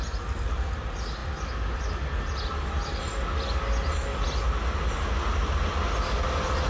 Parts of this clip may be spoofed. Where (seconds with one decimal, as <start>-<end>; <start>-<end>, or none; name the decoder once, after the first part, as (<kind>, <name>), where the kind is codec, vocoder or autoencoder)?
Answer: none